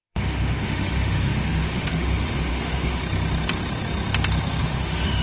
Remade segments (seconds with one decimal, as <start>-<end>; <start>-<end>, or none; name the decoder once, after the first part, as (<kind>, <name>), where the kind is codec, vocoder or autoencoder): 0.0-3.0 (autoencoder, DAC-VAE); 4.6-5.2